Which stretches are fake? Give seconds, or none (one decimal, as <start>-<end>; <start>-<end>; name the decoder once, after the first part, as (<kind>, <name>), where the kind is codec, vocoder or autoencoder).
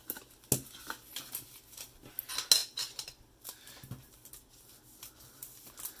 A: none